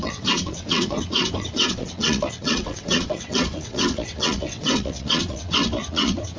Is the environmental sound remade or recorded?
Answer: remade